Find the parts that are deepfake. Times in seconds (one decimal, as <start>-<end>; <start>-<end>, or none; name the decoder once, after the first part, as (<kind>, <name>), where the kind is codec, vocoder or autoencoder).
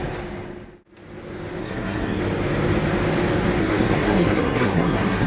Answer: 1.6-2.2 (codec, SNAC); 3.6-5.3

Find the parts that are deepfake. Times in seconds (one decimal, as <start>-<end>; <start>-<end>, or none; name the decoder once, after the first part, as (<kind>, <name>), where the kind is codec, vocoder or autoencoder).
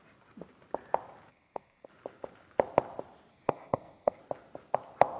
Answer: 1.3-1.9 (codec, SNAC); 3.3-4.2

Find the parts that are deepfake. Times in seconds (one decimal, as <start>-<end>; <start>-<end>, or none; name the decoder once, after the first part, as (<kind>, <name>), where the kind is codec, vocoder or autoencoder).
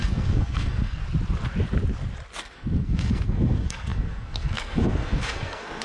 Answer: 0.0-1.0 (codec, SNAC); 2.4-5.8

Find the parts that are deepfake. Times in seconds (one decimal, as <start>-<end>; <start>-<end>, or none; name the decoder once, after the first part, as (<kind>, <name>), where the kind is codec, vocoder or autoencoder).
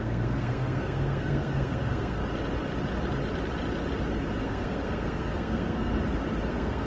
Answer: 0.0-2.2 (codec, SNAC); 4.4-5.9; 6.5-6.9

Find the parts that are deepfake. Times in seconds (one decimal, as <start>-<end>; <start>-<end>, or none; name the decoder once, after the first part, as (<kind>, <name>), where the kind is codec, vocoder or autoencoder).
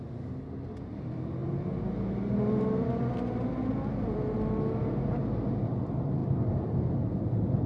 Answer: none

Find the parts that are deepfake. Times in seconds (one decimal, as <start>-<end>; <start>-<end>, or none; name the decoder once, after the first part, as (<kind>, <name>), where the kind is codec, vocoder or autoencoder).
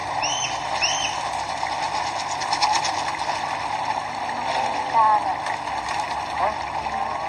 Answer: none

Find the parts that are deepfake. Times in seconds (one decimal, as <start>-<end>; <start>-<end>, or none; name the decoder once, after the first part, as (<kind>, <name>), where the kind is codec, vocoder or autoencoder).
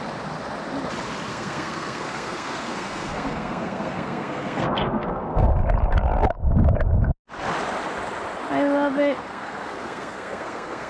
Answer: 1.3-5.5 (codec, SNAC); 9.2-10.9